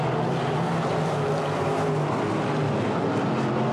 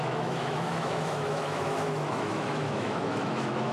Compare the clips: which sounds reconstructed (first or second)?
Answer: second